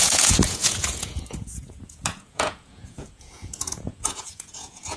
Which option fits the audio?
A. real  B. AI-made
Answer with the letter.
B